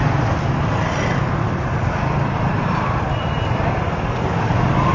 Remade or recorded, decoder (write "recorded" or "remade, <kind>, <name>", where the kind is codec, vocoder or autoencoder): recorded